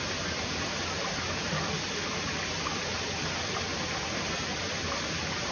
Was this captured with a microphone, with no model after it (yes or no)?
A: yes